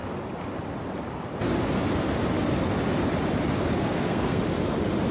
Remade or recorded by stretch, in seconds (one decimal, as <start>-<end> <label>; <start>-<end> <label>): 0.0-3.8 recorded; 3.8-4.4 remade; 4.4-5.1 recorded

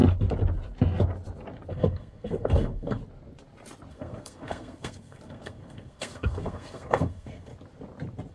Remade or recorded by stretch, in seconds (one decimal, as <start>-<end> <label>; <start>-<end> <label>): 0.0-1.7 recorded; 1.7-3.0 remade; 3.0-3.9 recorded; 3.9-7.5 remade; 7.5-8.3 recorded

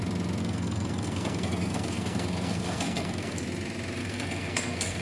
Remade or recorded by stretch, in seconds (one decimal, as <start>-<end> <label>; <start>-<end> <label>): 0.0-0.4 recorded; 0.4-3.4 remade; 3.4-4.0 recorded; 4.0-5.0 remade